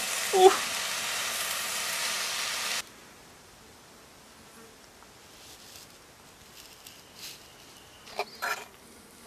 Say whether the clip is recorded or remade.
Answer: recorded